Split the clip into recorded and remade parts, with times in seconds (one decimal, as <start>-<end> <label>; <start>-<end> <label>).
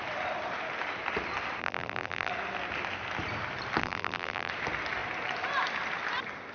0.0-1.6 recorded; 1.6-2.3 remade; 2.3-3.8 recorded; 3.8-4.5 remade; 4.5-6.5 recorded